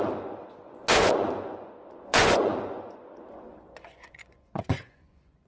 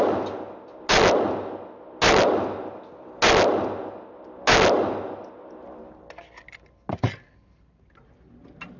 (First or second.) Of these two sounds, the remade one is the first